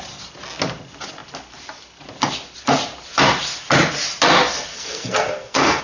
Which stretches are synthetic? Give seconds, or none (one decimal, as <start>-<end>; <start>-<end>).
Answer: 4.7-5.8